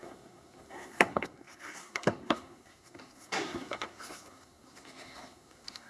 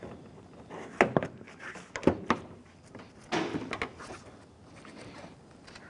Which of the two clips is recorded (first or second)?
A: second